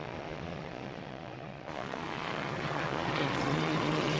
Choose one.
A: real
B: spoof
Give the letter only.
B